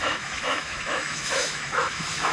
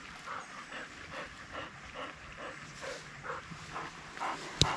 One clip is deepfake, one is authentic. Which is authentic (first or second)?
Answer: second